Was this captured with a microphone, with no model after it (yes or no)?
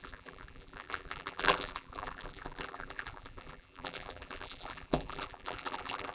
no